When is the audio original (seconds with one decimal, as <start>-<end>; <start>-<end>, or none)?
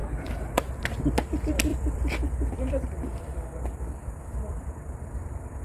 0.7-1.7; 4.7-5.6